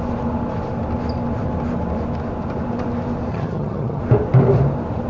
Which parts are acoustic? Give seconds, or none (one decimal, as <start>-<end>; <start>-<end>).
0.0-3.3; 4.0-5.1